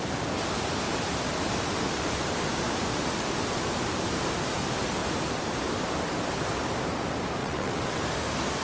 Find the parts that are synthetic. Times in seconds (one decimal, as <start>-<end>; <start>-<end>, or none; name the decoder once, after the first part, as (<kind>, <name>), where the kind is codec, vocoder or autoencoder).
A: 7.4-8.0 (vocoder, WaveNeXt)